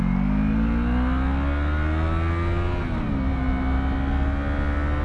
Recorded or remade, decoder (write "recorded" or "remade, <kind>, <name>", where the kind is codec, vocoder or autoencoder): recorded